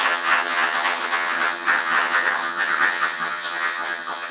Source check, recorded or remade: remade